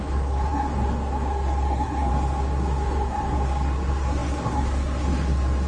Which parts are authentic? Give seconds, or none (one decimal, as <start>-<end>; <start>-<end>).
none